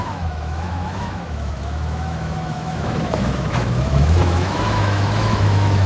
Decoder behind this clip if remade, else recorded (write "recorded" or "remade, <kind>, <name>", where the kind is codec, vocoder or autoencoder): remade, autoencoder, DAC-VAE